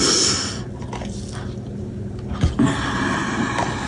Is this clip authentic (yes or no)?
yes